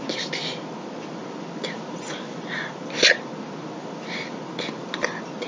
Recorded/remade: recorded